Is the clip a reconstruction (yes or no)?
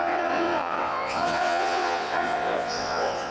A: yes